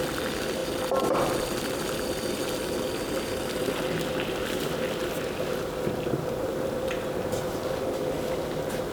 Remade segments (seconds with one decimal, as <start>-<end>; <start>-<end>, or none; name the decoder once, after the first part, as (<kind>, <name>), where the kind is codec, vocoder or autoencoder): none